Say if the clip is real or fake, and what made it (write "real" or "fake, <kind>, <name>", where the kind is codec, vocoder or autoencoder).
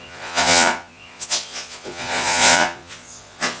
fake, vocoder, Vocos